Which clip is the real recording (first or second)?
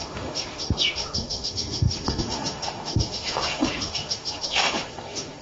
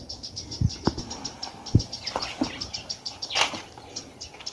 second